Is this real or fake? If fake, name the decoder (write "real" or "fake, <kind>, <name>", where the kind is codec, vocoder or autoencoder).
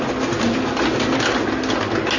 real